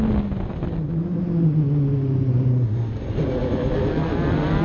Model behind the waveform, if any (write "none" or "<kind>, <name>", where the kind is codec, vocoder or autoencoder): none